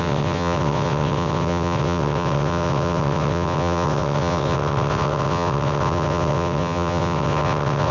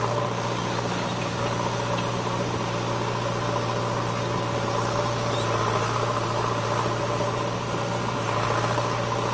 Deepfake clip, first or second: first